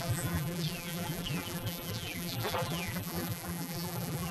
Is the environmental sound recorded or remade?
remade